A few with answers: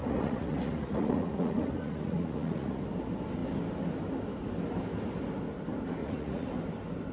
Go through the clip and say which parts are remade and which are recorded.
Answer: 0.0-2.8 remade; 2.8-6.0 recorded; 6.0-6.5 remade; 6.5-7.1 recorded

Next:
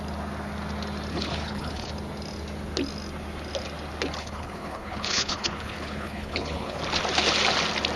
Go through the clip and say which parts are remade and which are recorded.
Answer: 0.0-1.1 recorded; 1.1-1.9 remade; 1.9-4.2 recorded; 4.2-6.8 remade; 6.8-8.0 recorded